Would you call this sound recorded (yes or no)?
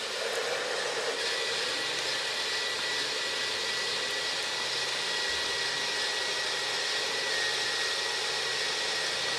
yes